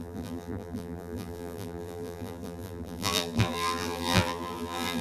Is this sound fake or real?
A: fake